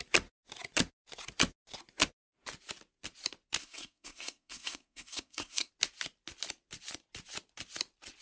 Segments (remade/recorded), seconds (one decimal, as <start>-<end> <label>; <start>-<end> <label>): 0.0-3.6 recorded; 3.6-5.7 remade; 5.7-8.2 recorded